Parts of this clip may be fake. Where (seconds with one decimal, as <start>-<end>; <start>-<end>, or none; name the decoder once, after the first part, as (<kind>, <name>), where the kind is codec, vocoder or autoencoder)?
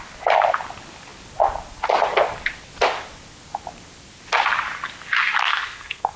5.4-6.2 (codec, SNAC)